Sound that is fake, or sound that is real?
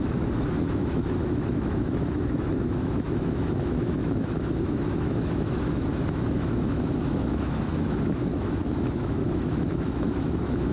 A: fake